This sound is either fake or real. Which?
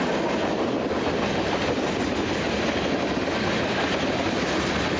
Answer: real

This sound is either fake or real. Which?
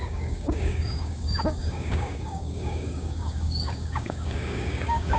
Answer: fake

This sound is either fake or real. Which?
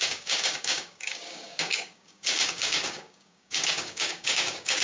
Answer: fake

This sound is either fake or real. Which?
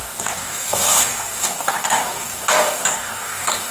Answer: fake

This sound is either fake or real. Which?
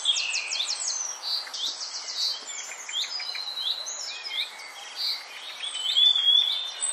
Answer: real